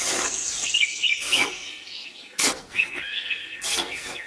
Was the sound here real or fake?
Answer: fake